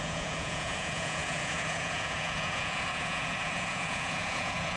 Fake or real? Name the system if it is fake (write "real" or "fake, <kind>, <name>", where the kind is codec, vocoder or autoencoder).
fake, vocoder, Vocos